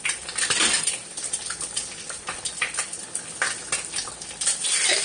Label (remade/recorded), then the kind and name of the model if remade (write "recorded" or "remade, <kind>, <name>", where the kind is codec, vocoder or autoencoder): remade, vocoder, BigVGAN v2